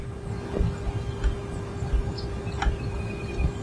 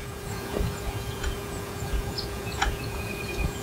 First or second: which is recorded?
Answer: first